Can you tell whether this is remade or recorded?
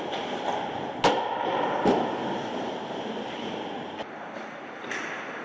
recorded